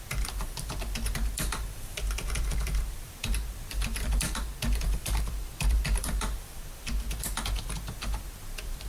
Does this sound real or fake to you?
fake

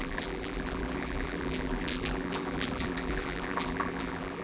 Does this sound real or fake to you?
fake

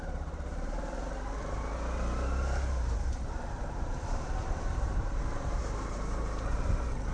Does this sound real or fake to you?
fake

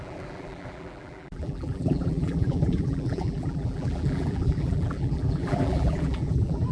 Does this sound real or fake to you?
fake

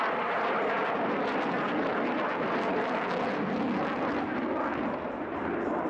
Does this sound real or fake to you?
real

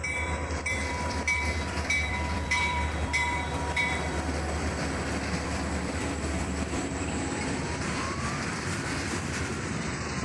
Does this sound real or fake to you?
fake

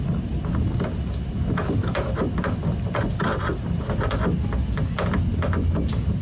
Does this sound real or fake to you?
real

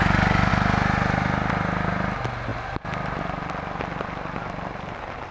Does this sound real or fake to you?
real